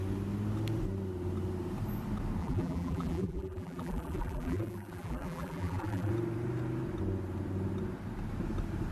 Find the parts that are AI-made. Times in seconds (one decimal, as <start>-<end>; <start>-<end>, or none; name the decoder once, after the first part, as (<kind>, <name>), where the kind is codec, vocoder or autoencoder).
2.4-6.1 (vocoder, BigVGAN v2)